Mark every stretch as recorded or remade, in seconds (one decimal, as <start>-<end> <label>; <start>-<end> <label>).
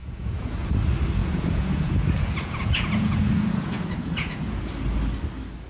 0.0-0.5 remade; 0.5-1.2 recorded; 1.2-4.6 remade; 4.6-5.7 recorded